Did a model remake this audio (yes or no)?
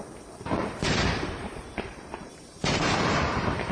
yes